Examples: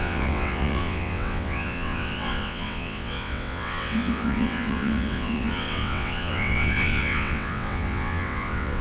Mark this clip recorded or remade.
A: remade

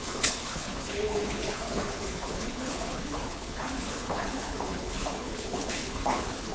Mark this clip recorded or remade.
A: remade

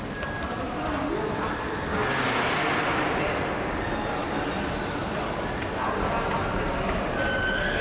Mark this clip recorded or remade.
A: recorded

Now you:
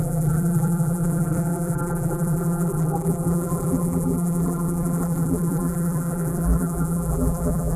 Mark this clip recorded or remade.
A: remade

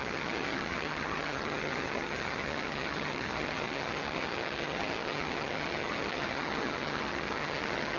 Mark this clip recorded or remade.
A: remade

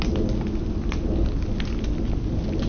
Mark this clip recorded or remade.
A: recorded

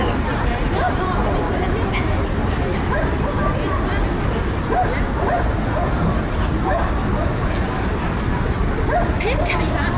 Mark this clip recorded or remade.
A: recorded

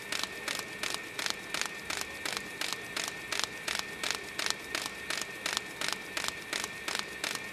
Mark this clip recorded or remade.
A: recorded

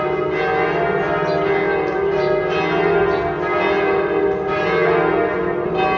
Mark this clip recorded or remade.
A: recorded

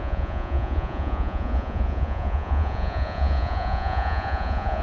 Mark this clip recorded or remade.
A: remade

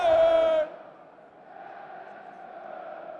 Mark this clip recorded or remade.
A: recorded